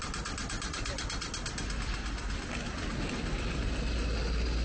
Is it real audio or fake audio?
real